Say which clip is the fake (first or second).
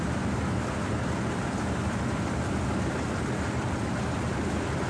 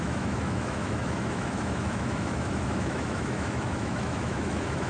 second